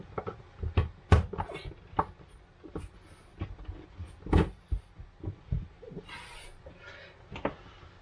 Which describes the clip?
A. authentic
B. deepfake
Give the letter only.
A